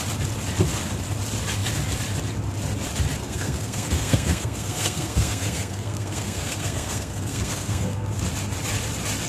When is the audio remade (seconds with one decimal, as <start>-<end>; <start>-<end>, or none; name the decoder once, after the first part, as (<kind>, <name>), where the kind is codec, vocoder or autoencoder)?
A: 3.2-8.2 (codec, SNAC)